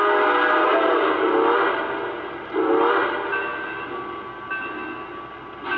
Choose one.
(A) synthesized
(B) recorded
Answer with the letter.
B